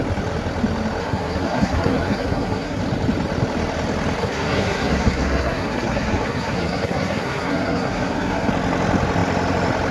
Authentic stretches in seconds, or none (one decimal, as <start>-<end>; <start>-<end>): 0.0-1.0; 2.8-4.2; 8.5-9.9